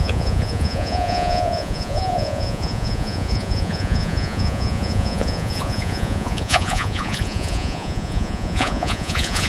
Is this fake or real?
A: fake